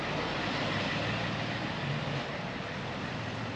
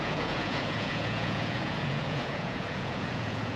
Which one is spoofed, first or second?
second